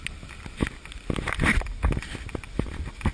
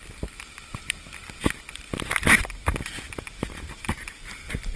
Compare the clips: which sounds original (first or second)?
first